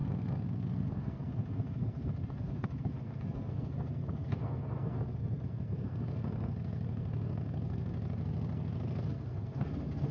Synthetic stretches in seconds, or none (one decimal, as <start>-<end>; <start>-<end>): 0.0-10.1